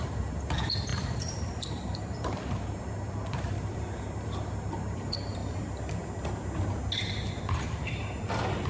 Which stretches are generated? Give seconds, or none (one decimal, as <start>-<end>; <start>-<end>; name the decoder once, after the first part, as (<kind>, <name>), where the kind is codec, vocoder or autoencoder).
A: 0.0-5.4 (vocoder, BigVGAN v2); 7.4-8.7